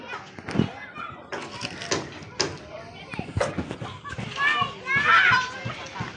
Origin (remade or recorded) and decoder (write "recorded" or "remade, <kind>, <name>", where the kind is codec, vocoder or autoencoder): recorded